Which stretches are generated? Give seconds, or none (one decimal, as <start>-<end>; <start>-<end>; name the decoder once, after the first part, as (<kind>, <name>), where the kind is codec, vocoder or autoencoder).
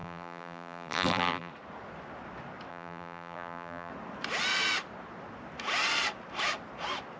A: 0.0-1.5 (vocoder, BigVGAN v2); 2.7-3.9